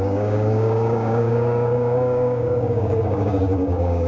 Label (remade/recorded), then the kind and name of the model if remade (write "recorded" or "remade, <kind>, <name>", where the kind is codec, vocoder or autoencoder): remade, codec, DAC